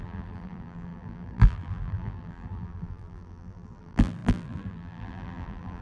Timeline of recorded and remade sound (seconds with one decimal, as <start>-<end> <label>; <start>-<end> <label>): 0.0-5.8 remade